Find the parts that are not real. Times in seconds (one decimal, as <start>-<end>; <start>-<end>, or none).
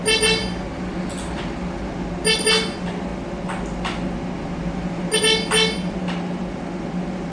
none